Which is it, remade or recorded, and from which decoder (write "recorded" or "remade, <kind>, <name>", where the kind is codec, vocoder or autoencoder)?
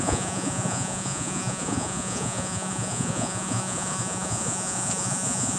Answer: remade, vocoder, Vocos